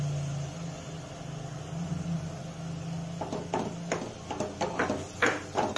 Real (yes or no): yes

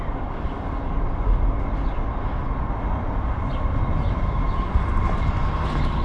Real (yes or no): yes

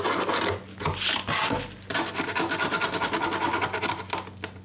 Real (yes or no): yes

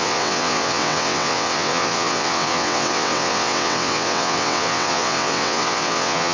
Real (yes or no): no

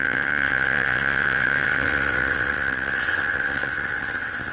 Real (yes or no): no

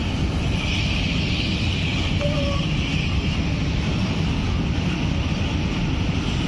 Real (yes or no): yes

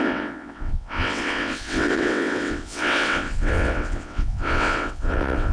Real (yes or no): no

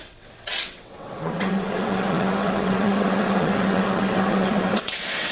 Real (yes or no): no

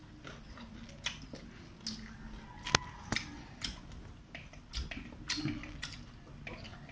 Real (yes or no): yes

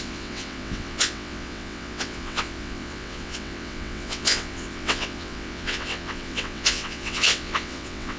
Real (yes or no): no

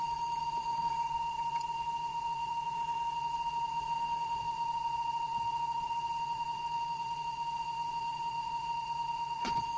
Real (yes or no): no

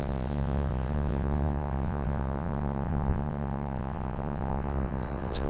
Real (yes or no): no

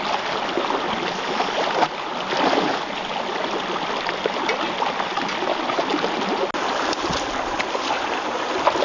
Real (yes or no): yes